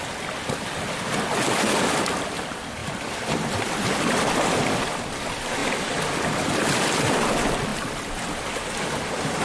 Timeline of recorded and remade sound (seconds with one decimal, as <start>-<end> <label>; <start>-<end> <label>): 0.0-9.4 recorded